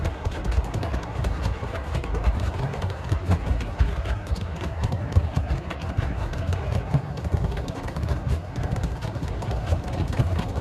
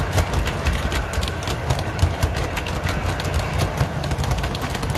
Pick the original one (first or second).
second